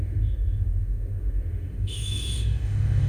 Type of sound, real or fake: fake